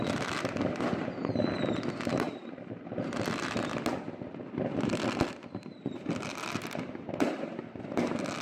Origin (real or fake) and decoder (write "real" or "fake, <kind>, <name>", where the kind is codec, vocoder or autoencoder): real